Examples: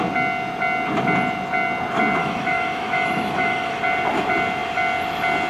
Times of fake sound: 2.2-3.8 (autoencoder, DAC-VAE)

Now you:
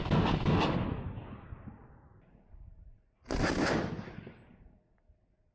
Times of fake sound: 1.8-4.5 (vocoder, BigVGAN v2)

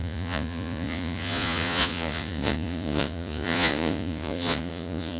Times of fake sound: 0.0-5.2 (vocoder, Vocos)